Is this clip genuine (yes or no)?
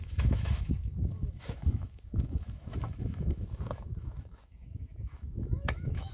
no